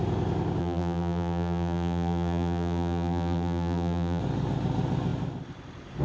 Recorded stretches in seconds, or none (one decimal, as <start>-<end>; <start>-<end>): 0.0-0.6; 4.2-6.0